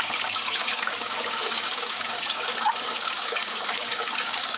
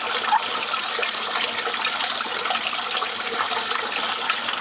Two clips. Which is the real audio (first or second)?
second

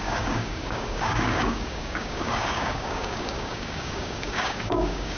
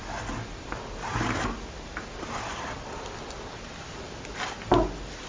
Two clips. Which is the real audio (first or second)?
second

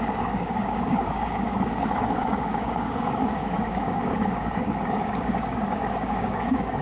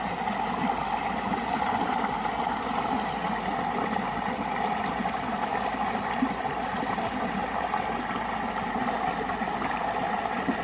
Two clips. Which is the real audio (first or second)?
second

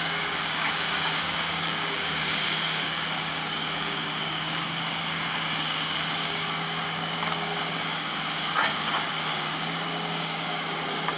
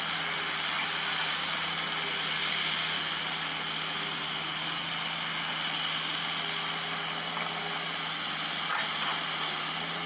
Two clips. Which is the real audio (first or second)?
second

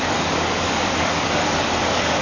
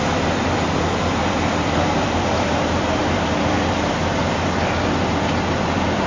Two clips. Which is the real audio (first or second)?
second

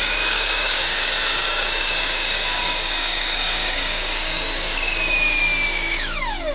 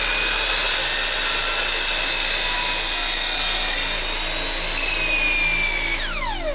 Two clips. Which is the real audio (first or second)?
second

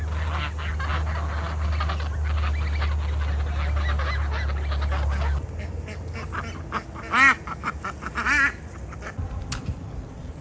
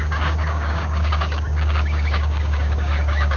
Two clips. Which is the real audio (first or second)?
first